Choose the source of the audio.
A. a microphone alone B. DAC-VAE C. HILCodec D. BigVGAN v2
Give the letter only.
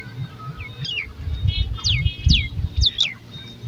A